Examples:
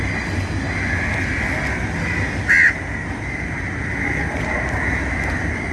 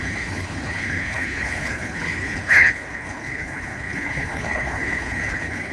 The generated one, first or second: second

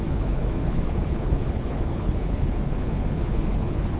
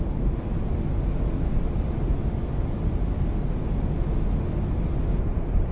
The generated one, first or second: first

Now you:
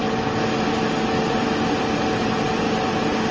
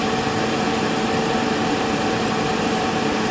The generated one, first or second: second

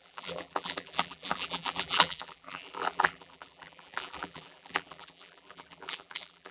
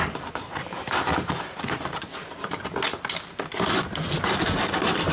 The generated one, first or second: first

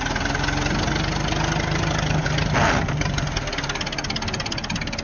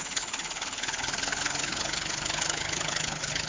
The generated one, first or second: second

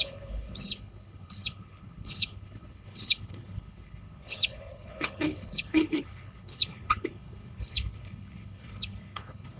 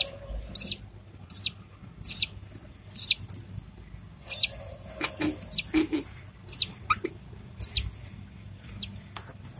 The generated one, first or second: first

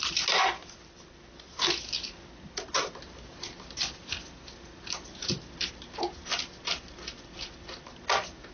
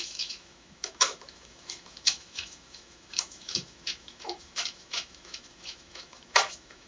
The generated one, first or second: second